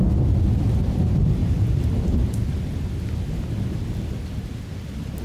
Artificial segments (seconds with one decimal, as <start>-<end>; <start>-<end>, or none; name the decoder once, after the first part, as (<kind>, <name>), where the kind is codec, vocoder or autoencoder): none